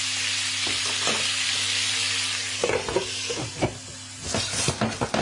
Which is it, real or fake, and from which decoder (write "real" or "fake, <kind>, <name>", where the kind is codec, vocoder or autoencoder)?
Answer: real